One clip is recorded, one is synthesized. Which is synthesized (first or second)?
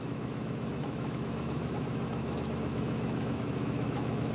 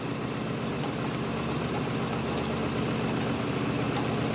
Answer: first